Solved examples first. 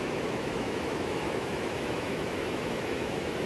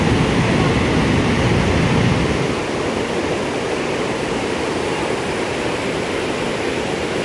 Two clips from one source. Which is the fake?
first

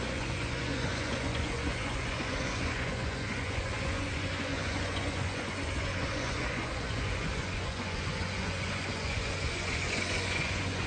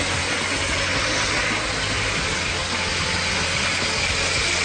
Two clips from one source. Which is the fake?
first